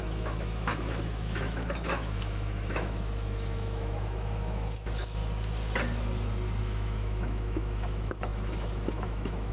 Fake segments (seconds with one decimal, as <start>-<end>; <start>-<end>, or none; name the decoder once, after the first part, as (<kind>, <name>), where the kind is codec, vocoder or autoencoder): 0.0-5.2 (autoencoder, DAC-VAE); 6.6-9.5